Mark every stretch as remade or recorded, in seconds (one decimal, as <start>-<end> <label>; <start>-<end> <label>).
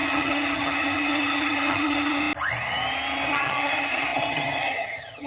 0.0-2.2 remade; 2.2-3.3 recorded; 3.3-5.3 remade